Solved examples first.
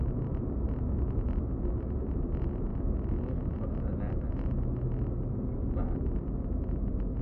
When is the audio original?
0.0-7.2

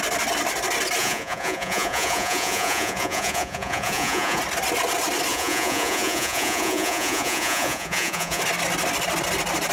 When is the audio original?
0.0-1.0; 4.4-5.3; 8.4-9.7

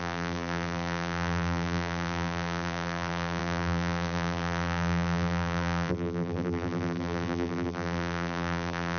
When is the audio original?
none

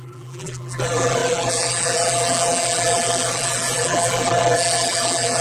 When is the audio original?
none

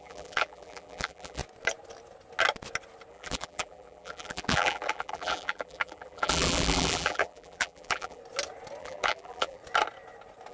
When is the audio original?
1.4-3.1; 8.2-8.8; 9.6-10.5

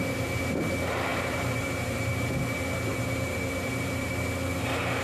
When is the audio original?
0.0-1.1; 2.3-2.9; 4.1-5.0

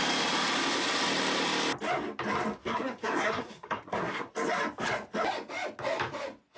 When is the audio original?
0.0-2.6; 4.3-6.6